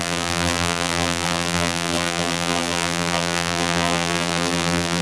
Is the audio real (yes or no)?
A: no